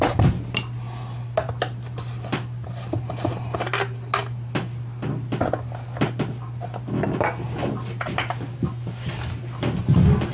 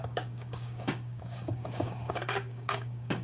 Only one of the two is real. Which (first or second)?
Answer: first